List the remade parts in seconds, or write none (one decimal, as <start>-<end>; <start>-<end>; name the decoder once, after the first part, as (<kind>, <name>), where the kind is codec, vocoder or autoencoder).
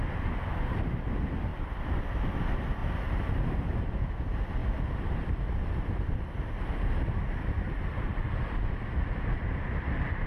1.5-2.4 (vocoder, BigVGAN v2); 2.8-3.8; 4.6-9.4